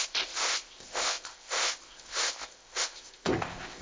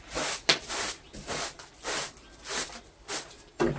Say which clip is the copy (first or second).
first